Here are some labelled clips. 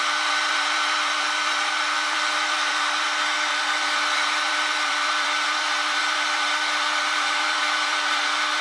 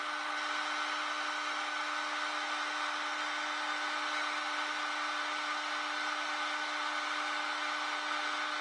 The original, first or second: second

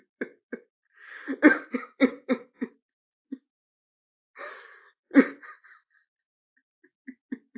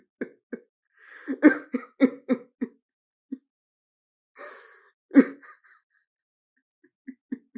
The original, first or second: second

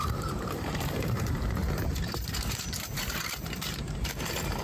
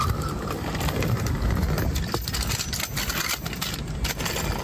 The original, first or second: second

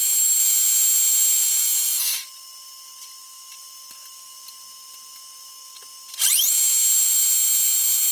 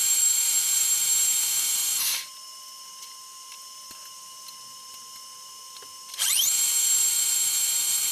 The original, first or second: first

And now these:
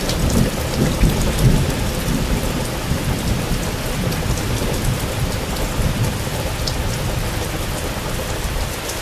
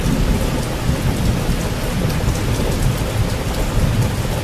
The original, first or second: second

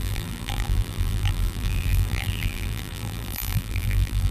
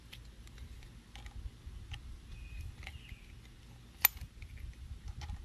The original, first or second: second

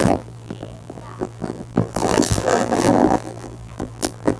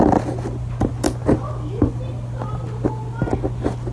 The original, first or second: second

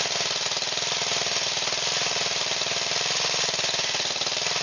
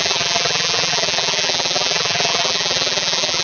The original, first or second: first